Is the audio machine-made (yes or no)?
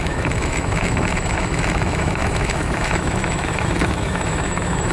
yes